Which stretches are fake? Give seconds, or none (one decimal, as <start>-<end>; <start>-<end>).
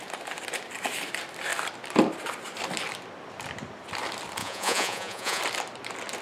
4.4-5.4